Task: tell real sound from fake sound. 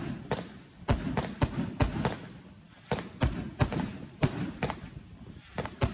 real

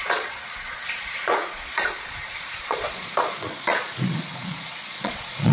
fake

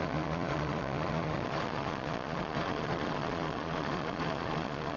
fake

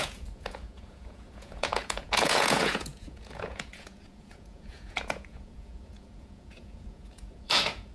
fake